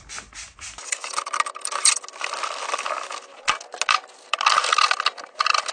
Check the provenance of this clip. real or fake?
real